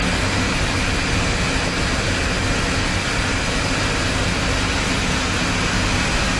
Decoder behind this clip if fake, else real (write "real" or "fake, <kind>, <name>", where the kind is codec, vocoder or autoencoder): real